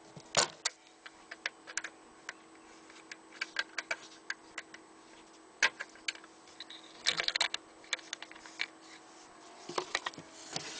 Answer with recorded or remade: recorded